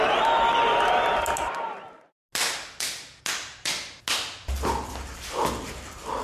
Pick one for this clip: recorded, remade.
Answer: recorded